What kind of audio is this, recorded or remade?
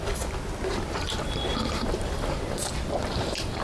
remade